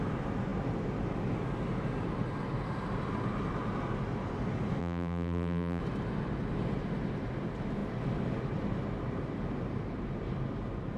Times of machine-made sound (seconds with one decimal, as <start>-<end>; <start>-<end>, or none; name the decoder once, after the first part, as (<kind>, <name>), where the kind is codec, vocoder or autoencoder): 4.8-5.8 (vocoder, BigVGAN v2)